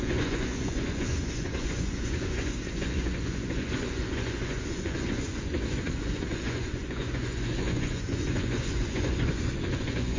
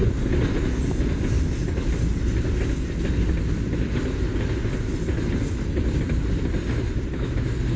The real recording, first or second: second